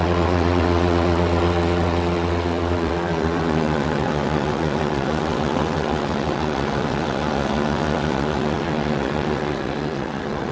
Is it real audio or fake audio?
fake